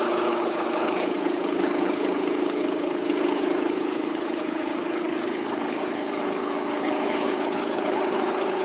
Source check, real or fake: fake